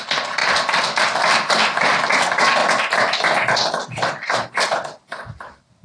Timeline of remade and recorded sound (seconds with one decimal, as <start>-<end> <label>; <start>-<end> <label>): 0.0-2.6 remade; 2.6-3.7 recorded; 3.7-5.8 remade